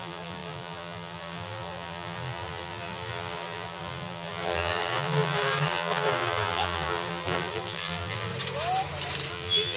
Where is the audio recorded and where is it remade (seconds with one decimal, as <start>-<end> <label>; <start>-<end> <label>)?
0.0-8.3 remade; 8.3-9.3 recorded; 9.3-9.8 remade